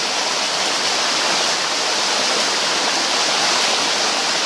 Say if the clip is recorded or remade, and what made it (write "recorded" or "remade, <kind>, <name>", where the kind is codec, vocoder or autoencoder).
recorded